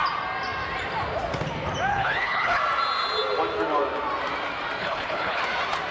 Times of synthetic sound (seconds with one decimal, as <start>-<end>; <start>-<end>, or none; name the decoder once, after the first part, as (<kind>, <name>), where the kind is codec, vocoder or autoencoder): 1.9-2.6 (codec, HILCodec); 4.8-5.4